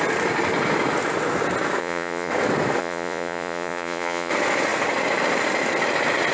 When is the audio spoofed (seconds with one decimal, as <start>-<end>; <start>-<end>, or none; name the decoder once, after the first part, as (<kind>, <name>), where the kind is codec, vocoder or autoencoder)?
1.8-2.3 (vocoder, Vocos); 2.8-4.3